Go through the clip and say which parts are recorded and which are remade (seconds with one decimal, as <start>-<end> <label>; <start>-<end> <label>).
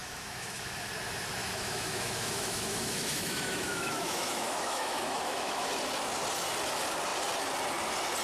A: 0.0-0.9 remade; 0.9-1.4 recorded; 1.4-5.7 remade; 5.7-8.2 recorded